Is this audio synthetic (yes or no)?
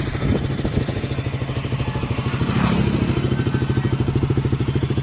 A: no